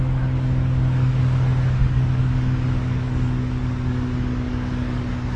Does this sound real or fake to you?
fake